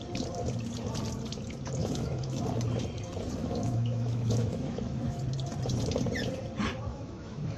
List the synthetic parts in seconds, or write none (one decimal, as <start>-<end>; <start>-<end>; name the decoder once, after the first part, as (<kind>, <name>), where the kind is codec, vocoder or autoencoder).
1.8-2.4 (autoencoder, DAC-VAE); 3.4-5.2; 6.9-7.6